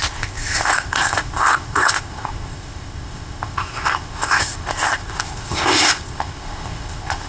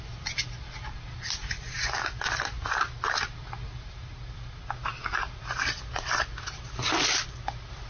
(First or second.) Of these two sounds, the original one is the second